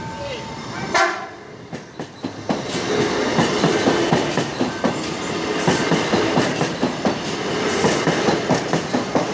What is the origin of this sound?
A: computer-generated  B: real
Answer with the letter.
A